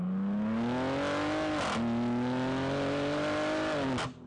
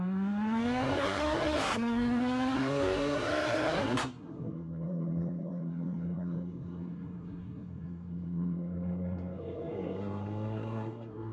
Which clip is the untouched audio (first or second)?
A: first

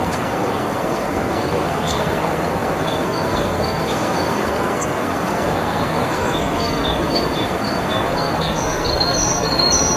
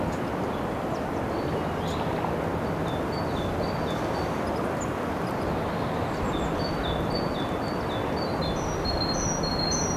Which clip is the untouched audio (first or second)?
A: second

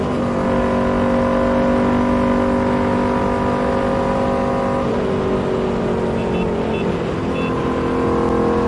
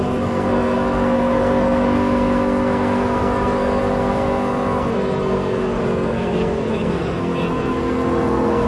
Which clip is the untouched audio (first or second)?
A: first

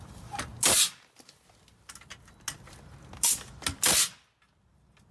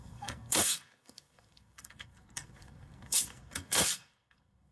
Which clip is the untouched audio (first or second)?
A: first